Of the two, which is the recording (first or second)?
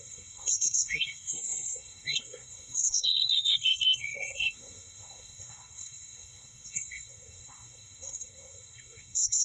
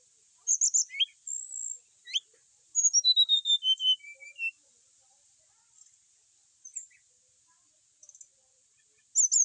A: second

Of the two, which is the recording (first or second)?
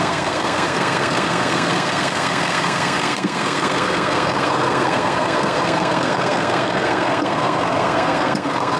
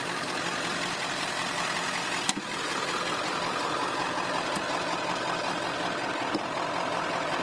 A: second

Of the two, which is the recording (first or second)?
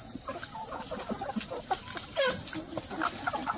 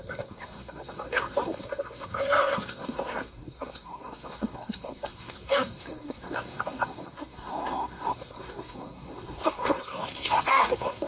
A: first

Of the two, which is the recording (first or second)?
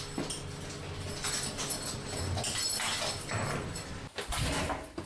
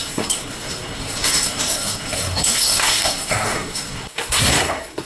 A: first